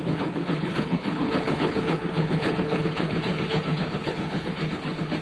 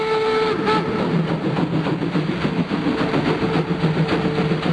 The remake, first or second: first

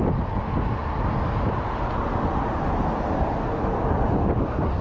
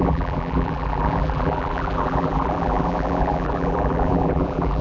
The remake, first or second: second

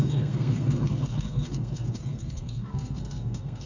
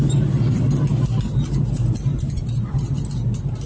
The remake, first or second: first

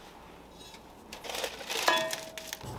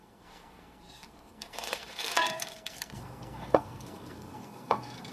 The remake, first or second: second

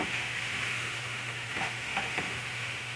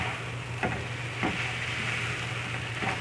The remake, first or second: first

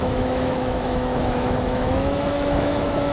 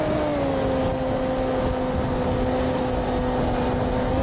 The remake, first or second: first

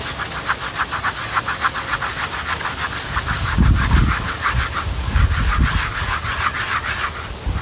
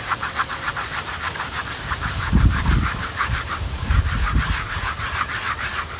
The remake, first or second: second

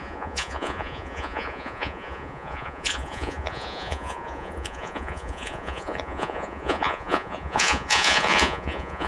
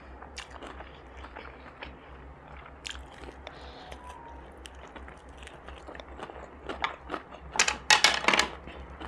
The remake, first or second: first